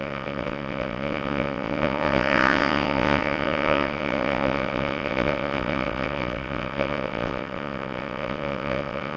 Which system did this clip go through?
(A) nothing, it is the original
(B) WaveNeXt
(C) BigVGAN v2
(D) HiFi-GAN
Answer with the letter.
B